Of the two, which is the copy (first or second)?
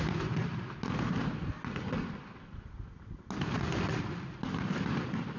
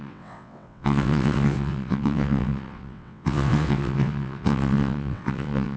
second